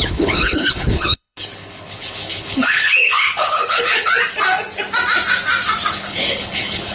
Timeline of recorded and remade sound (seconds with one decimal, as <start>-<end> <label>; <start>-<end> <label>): 0.0-4.1 remade; 4.1-5.9 recorded; 5.9-6.9 remade